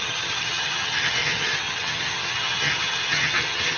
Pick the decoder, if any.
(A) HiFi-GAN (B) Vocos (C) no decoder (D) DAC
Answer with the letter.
A